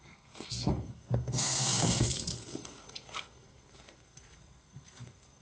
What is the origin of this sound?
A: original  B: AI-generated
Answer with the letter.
B